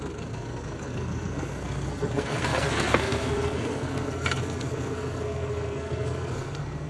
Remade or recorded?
remade